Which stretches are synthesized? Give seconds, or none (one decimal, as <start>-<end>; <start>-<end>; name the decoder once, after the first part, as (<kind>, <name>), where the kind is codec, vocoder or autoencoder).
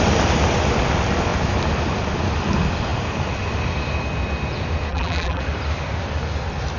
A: 4.9-5.4 (vocoder, BigVGAN v2)